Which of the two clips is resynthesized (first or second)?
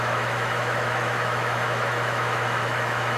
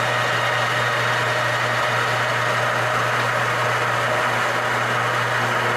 first